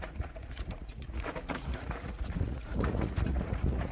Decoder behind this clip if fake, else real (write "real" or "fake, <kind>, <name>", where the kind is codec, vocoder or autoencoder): fake, vocoder, Vocos